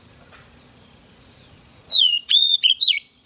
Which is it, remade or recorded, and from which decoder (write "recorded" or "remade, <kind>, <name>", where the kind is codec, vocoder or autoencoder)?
remade, vocoder, Vocos